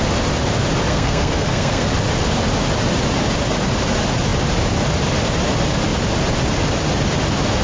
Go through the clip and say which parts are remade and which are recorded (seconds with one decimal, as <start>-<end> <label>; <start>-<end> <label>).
0.0-0.9 recorded; 0.9-1.9 remade; 1.9-7.6 recorded